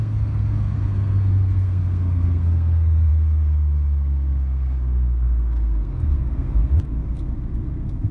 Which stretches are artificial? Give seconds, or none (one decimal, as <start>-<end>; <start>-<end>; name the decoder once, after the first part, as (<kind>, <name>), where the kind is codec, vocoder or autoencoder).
0.0-8.1 (codec, SNAC)